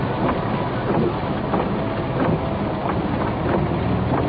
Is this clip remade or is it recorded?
recorded